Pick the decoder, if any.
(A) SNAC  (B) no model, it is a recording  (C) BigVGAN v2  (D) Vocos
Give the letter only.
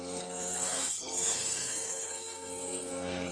A